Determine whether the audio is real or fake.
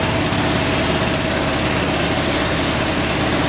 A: real